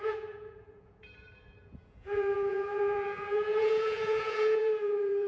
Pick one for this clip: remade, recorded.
remade